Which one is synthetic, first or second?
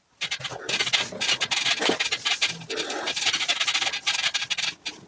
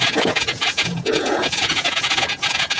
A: second